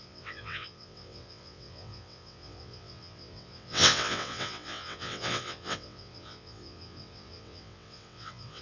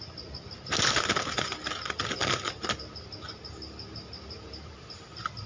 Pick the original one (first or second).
second